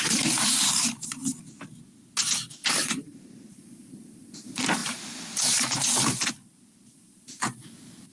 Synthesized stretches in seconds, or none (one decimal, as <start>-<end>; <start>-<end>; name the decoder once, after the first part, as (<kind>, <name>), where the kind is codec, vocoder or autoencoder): 0.0-1.2 (vocoder, BigVGAN v2); 2.7-8.1